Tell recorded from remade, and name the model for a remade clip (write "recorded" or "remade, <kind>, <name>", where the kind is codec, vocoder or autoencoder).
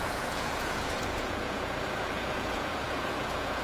remade, vocoder, Vocos